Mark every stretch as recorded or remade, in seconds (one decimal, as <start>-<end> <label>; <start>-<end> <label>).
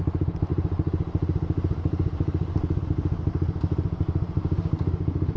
0.0-5.4 recorded